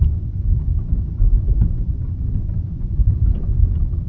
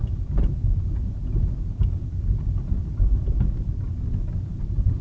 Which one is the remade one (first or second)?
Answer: first